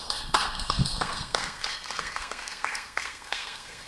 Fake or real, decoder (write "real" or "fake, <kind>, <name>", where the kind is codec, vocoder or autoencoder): fake, codec, SNAC